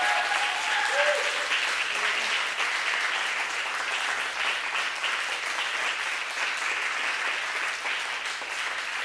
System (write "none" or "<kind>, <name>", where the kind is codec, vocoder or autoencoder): none